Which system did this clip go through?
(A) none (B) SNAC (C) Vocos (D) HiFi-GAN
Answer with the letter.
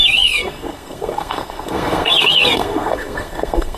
B